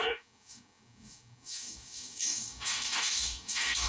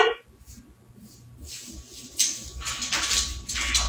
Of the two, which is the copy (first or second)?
first